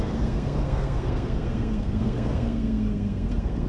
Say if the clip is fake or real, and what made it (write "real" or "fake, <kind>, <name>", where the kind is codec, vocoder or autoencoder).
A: fake, codec, SNAC